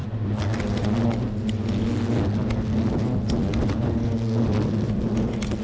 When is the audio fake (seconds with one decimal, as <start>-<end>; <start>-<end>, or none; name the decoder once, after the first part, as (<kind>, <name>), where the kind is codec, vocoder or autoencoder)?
none